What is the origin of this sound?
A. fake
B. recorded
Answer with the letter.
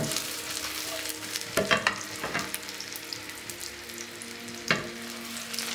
B